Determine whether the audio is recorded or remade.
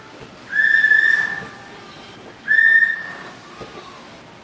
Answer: recorded